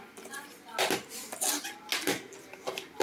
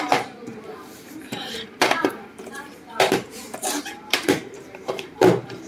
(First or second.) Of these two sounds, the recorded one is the first